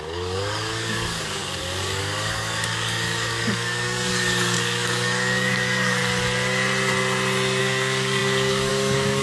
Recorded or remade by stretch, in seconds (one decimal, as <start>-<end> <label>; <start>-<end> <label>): 0.0-6.0 remade; 6.0-7.6 recorded; 7.6-9.2 remade